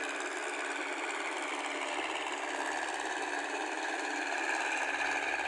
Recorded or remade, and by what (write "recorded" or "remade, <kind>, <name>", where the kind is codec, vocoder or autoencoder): recorded